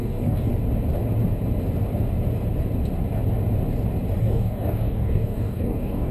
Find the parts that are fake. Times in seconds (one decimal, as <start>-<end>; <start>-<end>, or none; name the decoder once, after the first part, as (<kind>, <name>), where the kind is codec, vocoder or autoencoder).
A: 0.0-0.5 (codec, DAC); 4.2-6.1